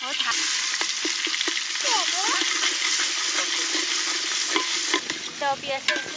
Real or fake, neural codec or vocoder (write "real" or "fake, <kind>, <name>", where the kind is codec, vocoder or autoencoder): real